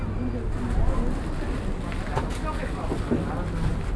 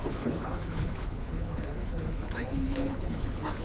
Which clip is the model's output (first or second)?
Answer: second